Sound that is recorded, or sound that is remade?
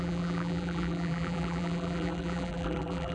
remade